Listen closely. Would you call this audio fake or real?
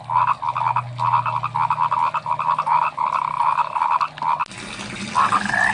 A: real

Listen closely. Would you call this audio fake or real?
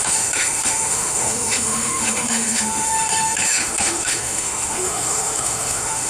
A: fake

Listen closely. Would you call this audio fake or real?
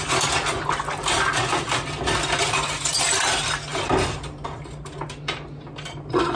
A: real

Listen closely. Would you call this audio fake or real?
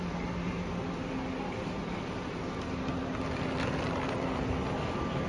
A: real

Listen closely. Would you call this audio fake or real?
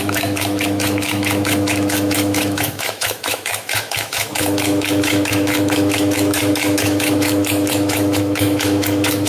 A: fake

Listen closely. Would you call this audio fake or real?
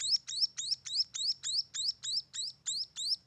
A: real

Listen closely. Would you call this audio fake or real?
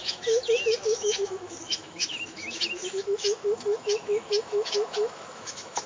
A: fake